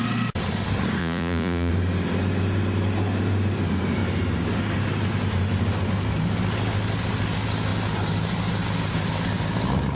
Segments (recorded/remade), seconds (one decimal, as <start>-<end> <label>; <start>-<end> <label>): 0.0-1.0 recorded; 1.0-1.7 remade; 1.7-10.0 recorded